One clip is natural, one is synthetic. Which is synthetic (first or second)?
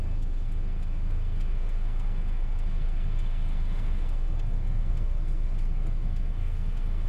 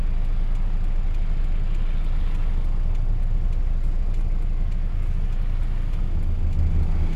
first